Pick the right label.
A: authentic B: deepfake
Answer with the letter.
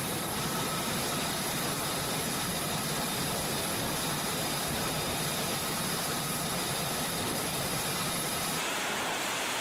B